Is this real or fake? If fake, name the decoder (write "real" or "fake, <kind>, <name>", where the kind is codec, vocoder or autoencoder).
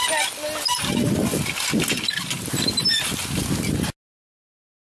real